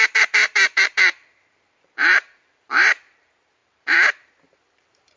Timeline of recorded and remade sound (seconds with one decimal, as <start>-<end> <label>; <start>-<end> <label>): 0.0-5.2 remade